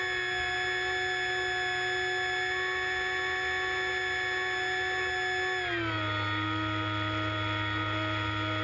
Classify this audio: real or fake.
real